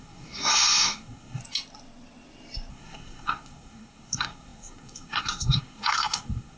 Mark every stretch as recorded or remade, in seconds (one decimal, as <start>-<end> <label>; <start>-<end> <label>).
0.0-1.4 remade; 1.4-2.7 recorded; 2.7-6.6 remade